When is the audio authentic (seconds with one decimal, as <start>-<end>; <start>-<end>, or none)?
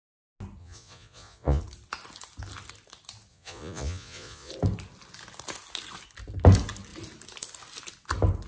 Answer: 0.0-0.6; 1.6-3.3; 4.5-8.5